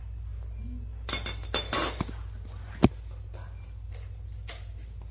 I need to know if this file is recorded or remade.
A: recorded